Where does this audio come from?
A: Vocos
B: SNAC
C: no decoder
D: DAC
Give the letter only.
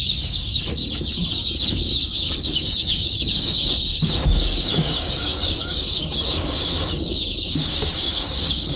D